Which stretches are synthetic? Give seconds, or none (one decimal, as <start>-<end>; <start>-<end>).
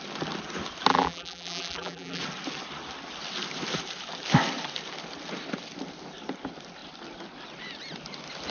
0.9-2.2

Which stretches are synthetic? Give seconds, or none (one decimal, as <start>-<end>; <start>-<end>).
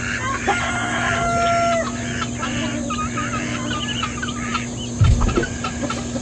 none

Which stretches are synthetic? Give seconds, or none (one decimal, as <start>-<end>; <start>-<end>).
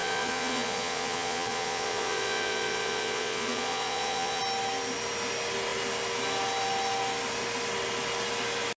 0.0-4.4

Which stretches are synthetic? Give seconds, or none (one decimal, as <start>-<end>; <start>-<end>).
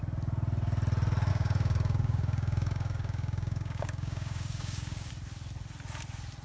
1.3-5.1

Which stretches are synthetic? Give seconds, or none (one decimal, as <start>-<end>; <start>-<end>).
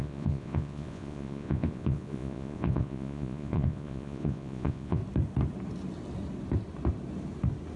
0.0-5.0